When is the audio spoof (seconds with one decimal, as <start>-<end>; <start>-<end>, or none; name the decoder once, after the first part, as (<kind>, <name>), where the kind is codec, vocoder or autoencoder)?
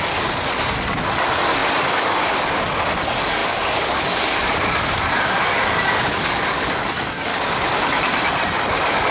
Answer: 0.0-7.3 (codec, DAC); 8.7-9.1